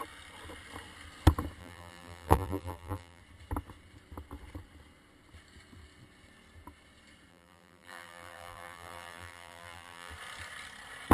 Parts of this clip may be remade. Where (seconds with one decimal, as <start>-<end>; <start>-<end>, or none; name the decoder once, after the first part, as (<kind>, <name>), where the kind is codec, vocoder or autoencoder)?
1.6-3.2 (vocoder, BigVGAN v2); 7.3-10.1